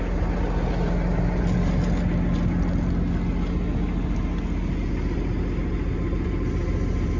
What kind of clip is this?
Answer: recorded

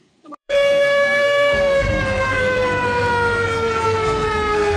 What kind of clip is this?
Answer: remade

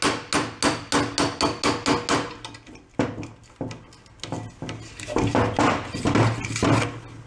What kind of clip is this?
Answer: recorded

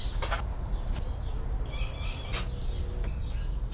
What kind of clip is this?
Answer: recorded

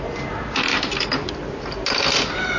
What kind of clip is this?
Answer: recorded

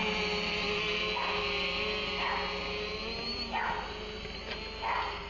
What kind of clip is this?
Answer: recorded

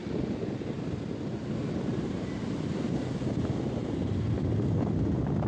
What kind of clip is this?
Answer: recorded